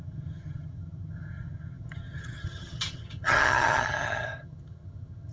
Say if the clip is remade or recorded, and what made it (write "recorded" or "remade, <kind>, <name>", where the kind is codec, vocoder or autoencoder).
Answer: remade, vocoder, HiFi-GAN